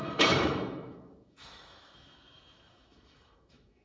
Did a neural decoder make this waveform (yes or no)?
yes